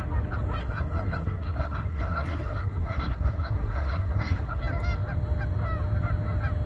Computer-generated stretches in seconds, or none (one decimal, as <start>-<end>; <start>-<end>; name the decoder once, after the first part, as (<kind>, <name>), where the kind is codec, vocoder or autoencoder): 0.6-4.6 (codec, SNAC)